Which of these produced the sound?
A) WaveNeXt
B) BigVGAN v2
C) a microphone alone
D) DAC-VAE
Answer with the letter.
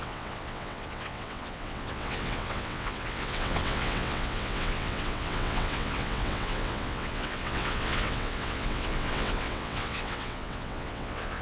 A